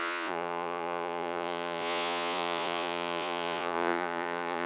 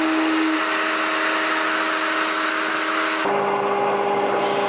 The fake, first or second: first